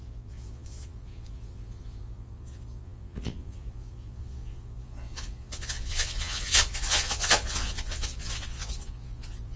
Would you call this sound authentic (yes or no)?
no